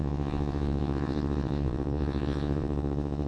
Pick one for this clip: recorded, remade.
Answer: remade